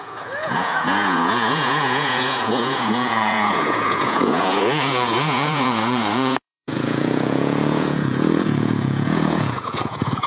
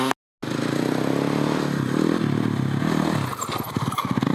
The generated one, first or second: first